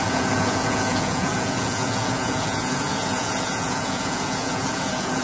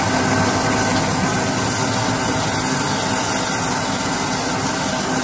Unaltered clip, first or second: second